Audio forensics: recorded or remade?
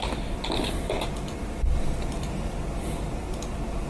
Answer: remade